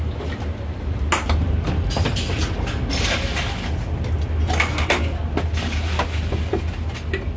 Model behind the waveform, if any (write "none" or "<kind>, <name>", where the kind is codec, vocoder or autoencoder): none